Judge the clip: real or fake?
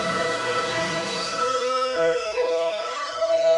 fake